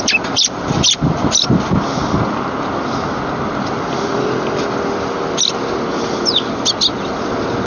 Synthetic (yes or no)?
no